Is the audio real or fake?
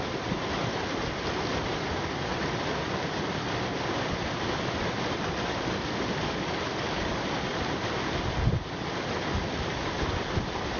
real